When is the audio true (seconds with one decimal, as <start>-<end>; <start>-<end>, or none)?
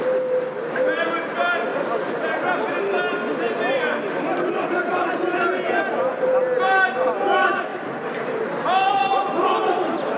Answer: 0.0-7.7; 9.1-9.6